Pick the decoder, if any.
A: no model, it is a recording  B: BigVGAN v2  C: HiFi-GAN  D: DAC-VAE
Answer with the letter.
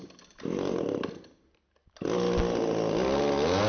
A